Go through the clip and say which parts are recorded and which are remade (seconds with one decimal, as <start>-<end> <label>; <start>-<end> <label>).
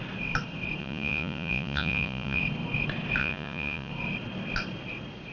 0.0-0.8 recorded; 0.8-2.4 remade; 2.4-3.2 recorded; 3.2-3.9 remade; 3.9-5.3 recorded